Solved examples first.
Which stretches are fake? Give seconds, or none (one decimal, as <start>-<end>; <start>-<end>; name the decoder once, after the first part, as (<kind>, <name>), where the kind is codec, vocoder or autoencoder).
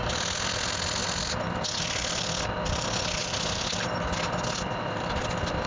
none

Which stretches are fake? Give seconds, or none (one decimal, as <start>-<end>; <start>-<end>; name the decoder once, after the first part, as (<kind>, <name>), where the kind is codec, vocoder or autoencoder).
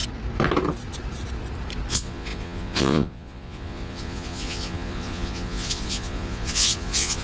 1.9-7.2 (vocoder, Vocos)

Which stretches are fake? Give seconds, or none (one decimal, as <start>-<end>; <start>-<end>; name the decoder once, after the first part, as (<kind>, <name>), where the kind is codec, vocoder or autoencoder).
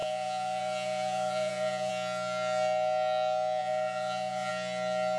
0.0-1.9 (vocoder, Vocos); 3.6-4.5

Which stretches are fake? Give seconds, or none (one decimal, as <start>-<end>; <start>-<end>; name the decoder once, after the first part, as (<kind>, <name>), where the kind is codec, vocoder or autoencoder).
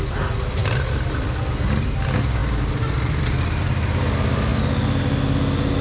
none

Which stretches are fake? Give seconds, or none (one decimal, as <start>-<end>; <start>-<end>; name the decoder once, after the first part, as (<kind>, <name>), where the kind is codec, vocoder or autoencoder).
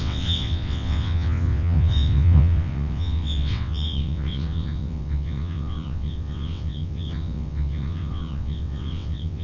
0.0-9.4 (vocoder, WaveNeXt)